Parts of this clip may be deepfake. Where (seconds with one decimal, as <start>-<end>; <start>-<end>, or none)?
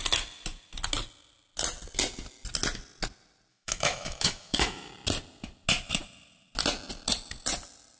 3.5-4.9